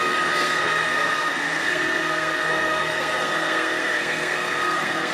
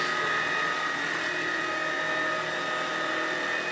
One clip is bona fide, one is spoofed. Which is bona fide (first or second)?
second